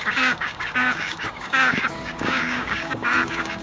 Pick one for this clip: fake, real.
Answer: fake